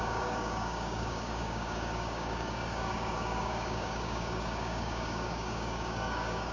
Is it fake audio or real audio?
fake